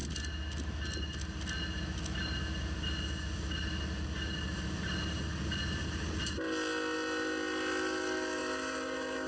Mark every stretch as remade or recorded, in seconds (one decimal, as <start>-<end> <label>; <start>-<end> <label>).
0.0-9.3 recorded